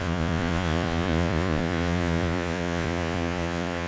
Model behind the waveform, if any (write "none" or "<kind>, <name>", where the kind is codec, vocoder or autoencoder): vocoder, Vocos